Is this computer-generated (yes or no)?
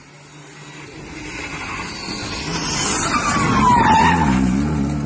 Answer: no